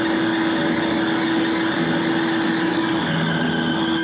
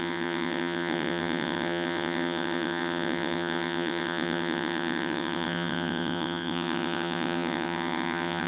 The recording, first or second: first